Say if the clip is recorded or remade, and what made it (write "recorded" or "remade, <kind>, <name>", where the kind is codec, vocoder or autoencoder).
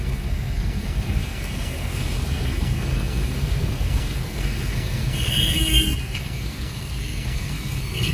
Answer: remade, codec, SNAC